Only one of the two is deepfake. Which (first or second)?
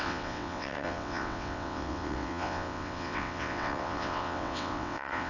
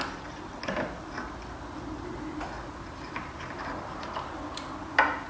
first